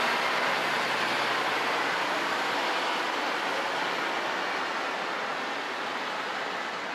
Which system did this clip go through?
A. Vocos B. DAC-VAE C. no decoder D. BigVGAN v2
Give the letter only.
C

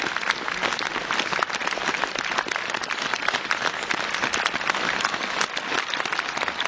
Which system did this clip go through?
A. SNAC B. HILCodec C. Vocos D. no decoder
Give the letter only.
D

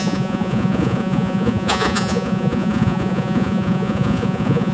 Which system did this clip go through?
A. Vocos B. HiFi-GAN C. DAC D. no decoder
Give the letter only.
A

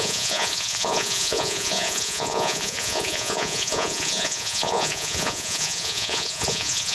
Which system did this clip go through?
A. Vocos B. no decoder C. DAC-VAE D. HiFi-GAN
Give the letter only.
A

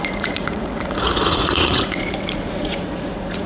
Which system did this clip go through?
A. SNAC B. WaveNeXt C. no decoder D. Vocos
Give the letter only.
D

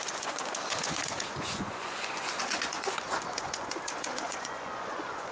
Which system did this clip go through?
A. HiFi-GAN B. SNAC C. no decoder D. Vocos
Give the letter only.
D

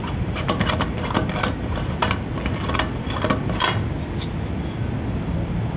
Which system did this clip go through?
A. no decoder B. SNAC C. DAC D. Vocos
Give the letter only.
A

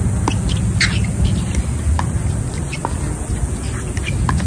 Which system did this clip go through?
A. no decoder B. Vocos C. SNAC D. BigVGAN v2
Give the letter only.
A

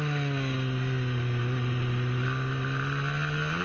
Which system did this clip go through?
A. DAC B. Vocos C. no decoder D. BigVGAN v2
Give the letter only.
C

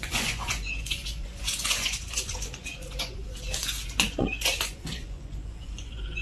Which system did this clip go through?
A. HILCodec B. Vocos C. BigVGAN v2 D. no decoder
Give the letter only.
B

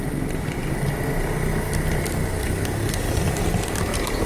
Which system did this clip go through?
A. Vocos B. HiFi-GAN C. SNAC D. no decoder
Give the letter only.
D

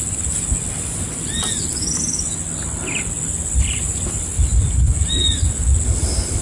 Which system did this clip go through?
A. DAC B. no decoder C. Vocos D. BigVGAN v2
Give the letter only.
B